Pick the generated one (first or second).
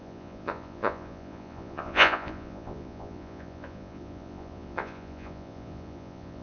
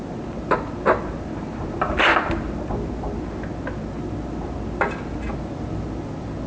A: first